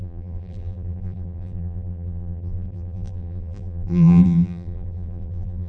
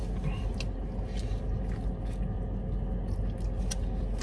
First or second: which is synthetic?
first